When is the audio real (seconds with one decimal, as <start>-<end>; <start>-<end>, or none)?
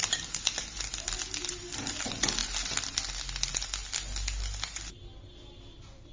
0.0-6.1